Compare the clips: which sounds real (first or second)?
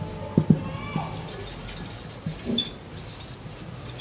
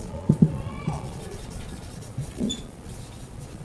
first